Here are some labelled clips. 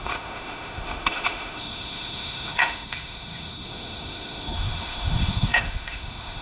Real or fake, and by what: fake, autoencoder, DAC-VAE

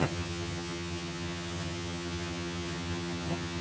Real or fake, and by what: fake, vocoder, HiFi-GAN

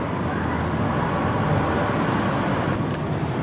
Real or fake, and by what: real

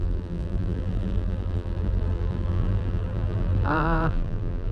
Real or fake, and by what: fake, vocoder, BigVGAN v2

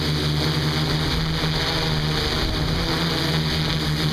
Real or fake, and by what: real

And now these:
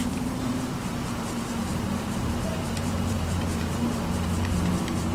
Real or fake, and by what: fake, vocoder, BigVGAN v2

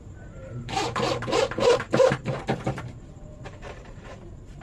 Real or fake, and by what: fake, vocoder, BigVGAN v2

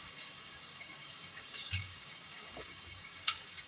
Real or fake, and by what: fake, codec, DAC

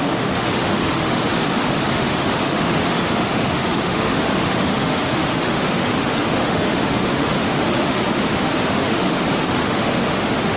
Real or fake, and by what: fake, autoencoder, DAC-VAE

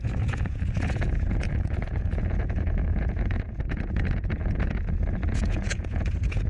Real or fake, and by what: fake, vocoder, Vocos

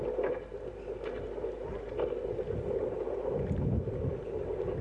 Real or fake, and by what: real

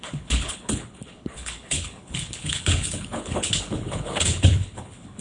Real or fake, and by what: fake, codec, HILCodec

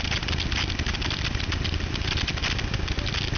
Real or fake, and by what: real